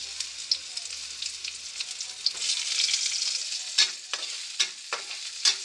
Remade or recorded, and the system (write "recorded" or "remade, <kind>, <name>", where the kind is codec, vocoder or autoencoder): recorded